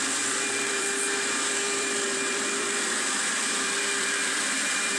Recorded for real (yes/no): no